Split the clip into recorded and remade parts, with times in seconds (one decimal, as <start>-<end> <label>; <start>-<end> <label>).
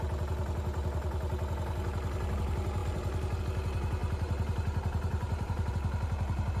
0.0-2.8 recorded; 2.8-3.4 remade; 3.4-4.0 recorded; 4.0-5.7 remade; 5.7-6.6 recorded